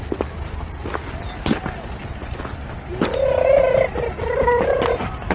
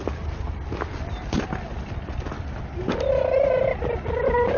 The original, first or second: first